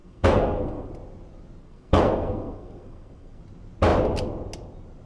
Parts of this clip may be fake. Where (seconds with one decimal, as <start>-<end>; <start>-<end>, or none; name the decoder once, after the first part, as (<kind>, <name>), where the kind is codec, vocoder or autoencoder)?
0.0-0.9 (codec, SNAC); 1.6-3.4